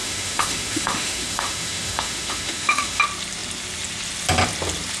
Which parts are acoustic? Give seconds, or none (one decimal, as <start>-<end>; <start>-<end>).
3.0-5.0